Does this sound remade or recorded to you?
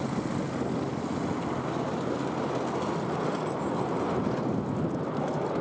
recorded